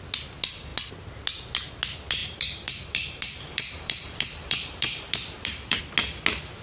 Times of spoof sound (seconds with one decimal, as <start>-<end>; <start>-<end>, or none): 2.2-5.8